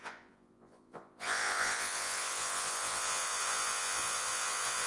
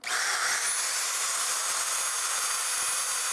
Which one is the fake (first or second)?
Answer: first